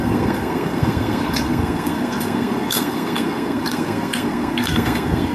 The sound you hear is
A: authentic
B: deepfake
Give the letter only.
B